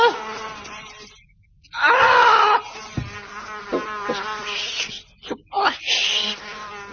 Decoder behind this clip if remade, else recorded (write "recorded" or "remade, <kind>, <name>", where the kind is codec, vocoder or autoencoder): recorded